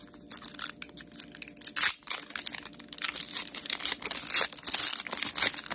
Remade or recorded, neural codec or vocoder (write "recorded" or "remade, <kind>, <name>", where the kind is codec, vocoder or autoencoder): recorded